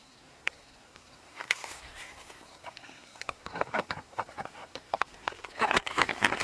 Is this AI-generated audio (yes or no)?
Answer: yes